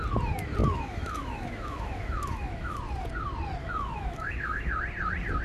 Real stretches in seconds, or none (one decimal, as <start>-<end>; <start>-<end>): 0.0-0.6; 2.8-3.6; 4.7-5.4